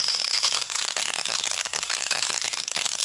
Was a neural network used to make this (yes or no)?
yes